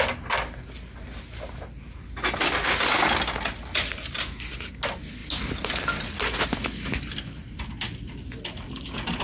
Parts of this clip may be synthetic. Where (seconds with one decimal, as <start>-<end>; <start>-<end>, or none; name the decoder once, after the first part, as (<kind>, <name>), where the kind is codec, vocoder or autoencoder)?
none